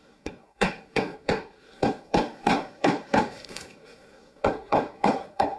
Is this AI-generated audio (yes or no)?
yes